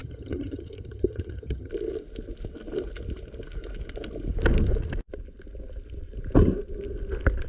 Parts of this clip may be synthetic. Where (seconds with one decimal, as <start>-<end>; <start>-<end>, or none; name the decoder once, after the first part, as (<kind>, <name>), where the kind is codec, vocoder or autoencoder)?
0.0-1.7 (vocoder, HiFi-GAN)